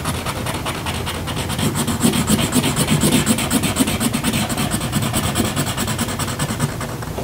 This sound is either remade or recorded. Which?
recorded